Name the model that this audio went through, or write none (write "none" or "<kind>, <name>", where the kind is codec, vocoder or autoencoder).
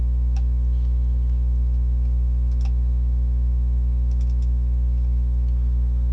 none